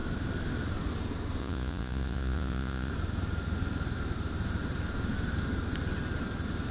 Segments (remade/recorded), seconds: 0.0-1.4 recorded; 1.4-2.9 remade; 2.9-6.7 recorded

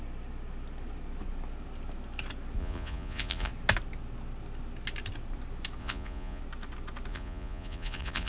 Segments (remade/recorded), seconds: 0.0-2.6 recorded; 2.6-3.5 remade; 3.5-5.8 recorded; 5.8-6.4 remade; 6.4-7.1 recorded; 7.1-8.3 remade

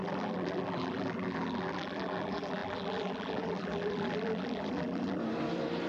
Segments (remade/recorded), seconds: 0.0-5.2 remade; 5.2-5.9 recorded

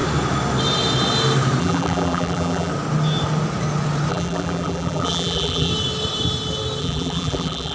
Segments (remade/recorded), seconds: 0.0-1.6 recorded; 1.6-2.7 remade; 2.7-4.1 recorded; 4.1-5.7 remade; 5.7-6.8 recorded; 6.8-7.7 remade

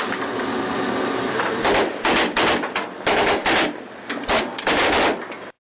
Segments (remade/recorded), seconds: 0.0-5.6 recorded

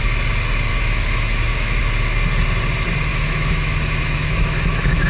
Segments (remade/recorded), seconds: 0.0-0.7 recorded; 0.7-1.8 remade; 1.8-3.1 recorded; 3.1-5.1 remade

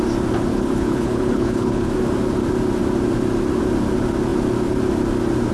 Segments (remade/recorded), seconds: 0.0-0.5 recorded; 0.5-1.9 remade; 1.9-5.5 recorded